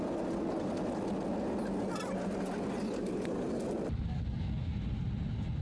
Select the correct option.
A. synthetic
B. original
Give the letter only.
B